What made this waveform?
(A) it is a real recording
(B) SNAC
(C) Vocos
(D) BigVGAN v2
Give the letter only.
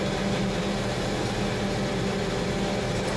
A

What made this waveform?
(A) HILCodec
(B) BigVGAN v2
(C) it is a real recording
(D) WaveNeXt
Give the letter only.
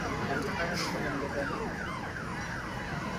B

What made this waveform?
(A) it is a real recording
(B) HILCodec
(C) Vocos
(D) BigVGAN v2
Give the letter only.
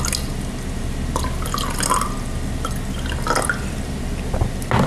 A